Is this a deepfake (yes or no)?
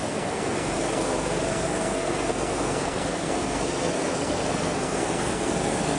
yes